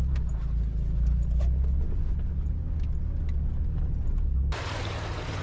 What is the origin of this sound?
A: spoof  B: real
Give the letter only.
B